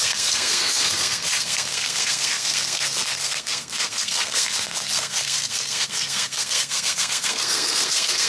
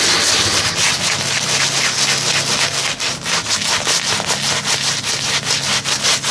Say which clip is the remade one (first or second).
first